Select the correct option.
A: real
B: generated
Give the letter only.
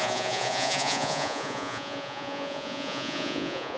B